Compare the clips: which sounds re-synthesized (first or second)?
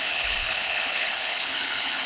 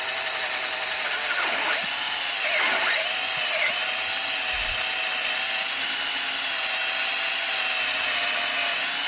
first